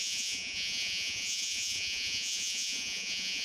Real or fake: fake